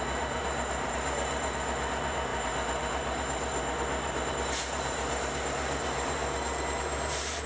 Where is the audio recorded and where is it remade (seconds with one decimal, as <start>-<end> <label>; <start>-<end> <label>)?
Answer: 0.0-6.2 remade; 6.2-6.7 recorded; 6.7-7.5 remade